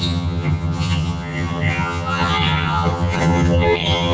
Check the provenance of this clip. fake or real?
fake